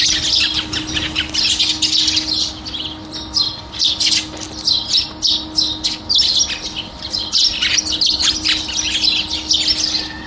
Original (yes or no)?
yes